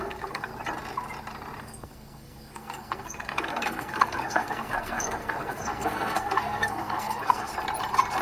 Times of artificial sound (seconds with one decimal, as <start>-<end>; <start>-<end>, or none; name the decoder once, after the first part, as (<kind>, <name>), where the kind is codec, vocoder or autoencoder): 0.0-0.5 (codec, SNAC); 1.6-7.5